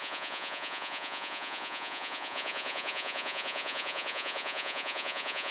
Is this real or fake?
fake